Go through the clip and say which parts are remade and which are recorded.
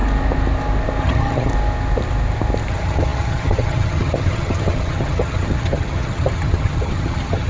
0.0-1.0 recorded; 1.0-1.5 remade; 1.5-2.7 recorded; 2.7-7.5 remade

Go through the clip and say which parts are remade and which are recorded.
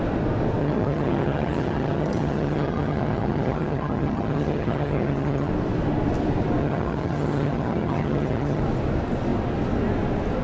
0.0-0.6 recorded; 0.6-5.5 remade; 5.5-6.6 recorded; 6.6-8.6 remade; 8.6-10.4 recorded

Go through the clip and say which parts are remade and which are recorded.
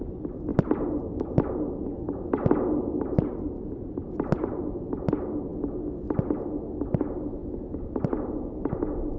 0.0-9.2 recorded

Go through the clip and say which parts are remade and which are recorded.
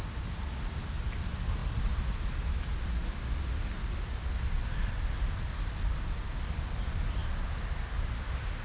0.0-8.6 recorded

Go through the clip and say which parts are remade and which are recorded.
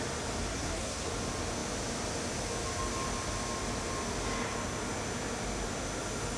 0.0-0.5 recorded; 0.5-1.1 remade; 1.1-6.4 recorded